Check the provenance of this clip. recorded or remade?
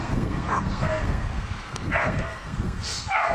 remade